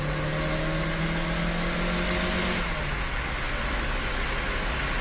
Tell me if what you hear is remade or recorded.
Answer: recorded